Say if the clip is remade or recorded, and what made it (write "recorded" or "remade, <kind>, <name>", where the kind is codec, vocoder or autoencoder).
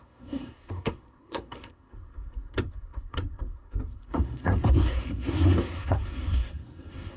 remade, codec, SNAC